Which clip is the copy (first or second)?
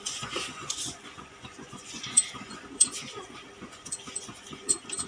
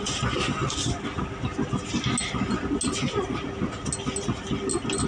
first